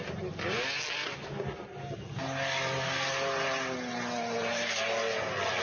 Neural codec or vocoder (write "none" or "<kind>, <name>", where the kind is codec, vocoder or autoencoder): none